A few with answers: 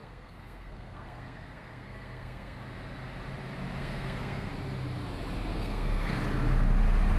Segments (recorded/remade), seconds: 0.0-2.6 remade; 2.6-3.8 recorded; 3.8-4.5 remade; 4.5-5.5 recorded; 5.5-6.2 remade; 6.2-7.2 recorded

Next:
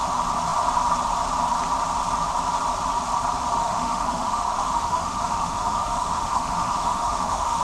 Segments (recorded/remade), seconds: 0.0-3.6 recorded; 3.6-7.6 remade

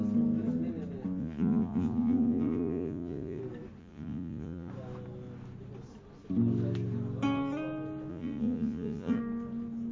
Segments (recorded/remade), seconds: 0.0-1.2 recorded; 1.2-3.4 remade; 3.4-3.8 recorded; 3.8-4.7 remade; 4.7-8.1 recorded; 8.1-9.2 remade; 9.2-9.9 recorded

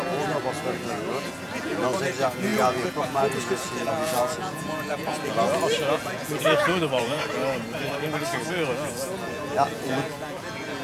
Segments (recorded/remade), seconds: 0.0-0.4 remade; 0.4-1.5 recorded; 1.5-7.4 remade; 7.4-8.5 recorded; 8.5-10.8 remade

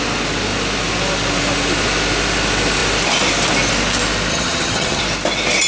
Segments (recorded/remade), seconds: 0.0-4.3 recorded; 4.3-5.0 remade; 5.0-5.7 recorded

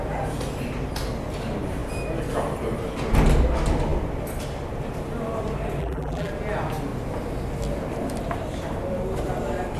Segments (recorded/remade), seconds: 0.0-5.8 recorded; 5.8-6.3 remade; 6.3-9.8 recorded

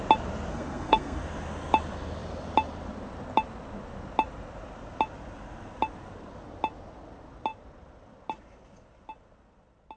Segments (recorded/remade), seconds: 0.0-0.5 recorded; 0.5-1.2 remade; 1.2-10.0 recorded